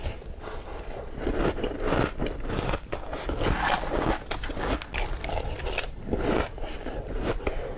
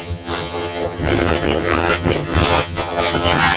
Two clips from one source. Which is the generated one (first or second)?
second